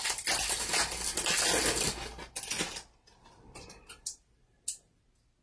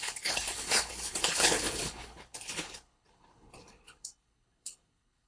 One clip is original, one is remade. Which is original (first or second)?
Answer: first